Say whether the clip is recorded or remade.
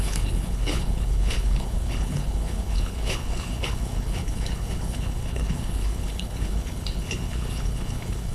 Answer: remade